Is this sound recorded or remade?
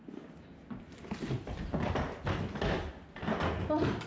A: recorded